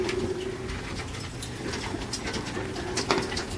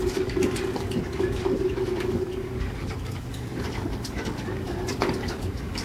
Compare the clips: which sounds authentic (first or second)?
first